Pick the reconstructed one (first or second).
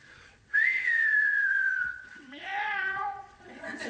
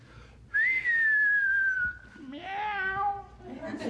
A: first